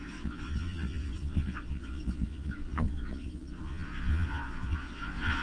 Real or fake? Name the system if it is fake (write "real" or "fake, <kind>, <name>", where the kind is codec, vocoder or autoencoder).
fake, vocoder, Vocos